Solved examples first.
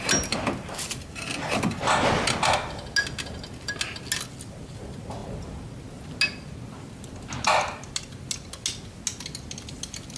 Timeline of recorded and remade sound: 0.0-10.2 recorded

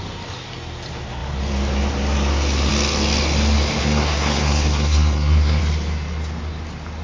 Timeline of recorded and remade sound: 0.0-3.8 recorded; 3.8-5.6 remade; 5.6-7.0 recorded

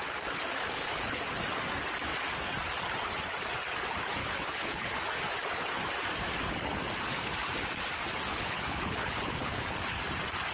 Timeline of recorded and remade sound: 0.0-0.6 recorded; 0.6-1.2 remade; 1.2-4.2 recorded; 4.2-4.9 remade; 4.9-8.3 recorded; 8.3-10.0 remade; 10.0-10.5 recorded